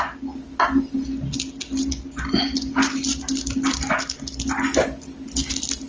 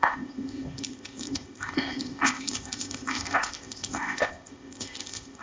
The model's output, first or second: second